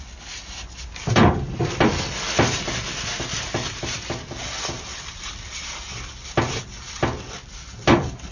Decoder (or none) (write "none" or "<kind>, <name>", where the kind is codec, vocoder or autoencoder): none